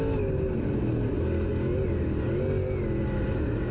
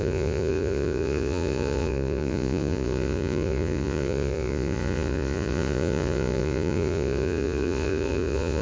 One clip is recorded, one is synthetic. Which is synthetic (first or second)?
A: second